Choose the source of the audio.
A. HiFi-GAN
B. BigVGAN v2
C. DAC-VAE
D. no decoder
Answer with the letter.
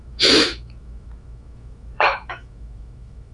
C